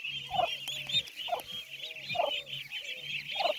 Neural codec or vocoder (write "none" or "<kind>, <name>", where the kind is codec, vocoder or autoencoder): none